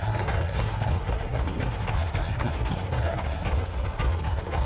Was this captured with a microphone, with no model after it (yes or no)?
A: no